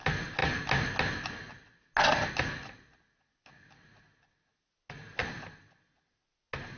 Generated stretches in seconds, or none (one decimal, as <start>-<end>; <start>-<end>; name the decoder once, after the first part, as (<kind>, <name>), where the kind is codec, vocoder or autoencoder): none